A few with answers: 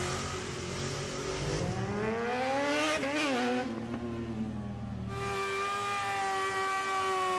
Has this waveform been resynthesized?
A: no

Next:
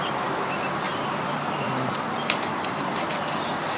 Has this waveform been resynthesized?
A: no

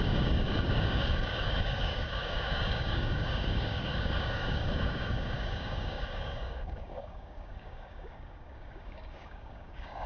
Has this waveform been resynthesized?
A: yes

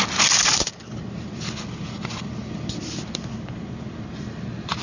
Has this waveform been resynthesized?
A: no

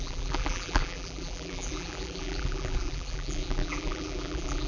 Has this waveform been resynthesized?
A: yes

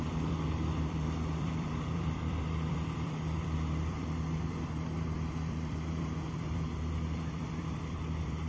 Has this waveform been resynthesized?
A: yes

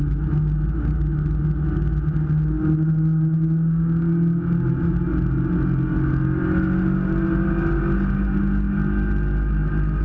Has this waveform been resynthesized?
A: no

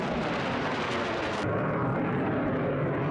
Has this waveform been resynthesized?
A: no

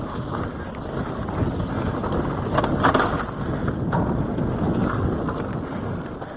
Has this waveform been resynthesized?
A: no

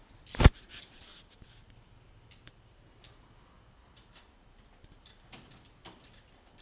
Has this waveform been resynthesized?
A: no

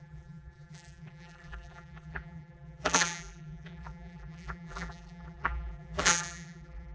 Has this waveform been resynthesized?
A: yes